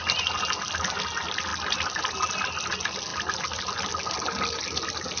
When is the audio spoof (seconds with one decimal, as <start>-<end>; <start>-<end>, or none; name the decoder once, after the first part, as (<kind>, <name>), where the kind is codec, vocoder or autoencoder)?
none